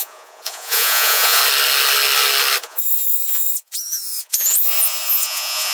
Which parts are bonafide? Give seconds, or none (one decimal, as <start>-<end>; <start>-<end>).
1.4-2.6